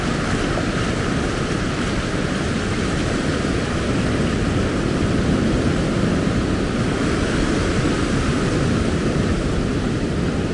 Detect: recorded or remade recorded